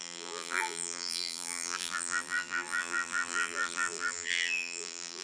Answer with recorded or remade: remade